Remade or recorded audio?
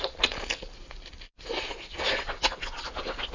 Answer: recorded